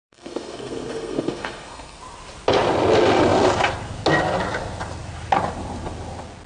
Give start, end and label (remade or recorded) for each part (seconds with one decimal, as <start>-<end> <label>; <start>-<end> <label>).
0.0-2.0 remade; 2.0-6.5 recorded